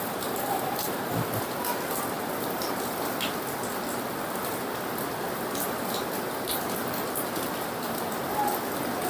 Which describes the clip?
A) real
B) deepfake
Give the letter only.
A